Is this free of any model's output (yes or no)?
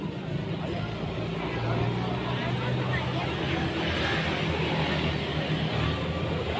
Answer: yes